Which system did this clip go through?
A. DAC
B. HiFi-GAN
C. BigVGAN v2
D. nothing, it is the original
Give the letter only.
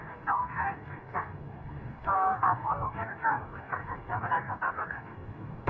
A